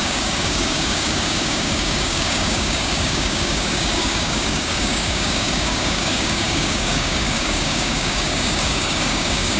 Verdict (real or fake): fake